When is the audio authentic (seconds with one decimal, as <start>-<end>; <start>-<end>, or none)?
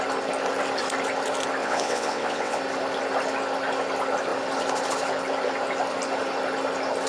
0.0-1.6; 2.6-7.1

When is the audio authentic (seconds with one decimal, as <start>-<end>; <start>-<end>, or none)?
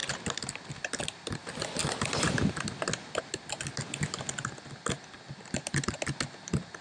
0.0-6.8